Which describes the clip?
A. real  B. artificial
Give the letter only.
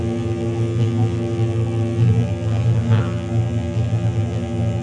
B